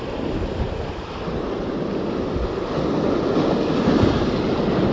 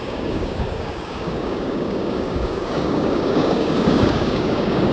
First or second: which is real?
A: first